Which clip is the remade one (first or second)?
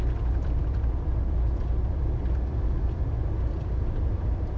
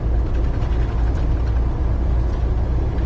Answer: first